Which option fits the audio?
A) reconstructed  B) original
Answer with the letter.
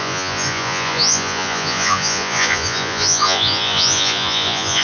A